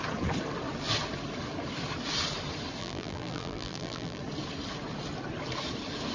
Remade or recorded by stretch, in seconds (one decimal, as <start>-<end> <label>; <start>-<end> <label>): 0.0-2.8 recorded; 2.8-4.2 remade; 4.2-6.1 recorded